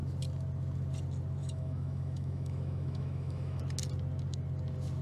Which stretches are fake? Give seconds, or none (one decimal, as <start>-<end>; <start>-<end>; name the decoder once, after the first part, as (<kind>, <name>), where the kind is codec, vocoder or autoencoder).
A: 1.4-3.6 (autoencoder, DAC-VAE)